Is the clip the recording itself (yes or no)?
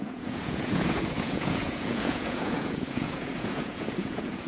no